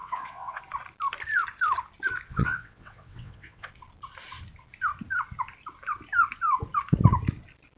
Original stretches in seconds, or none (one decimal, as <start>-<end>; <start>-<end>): 0.6-2.3; 3.7-7.8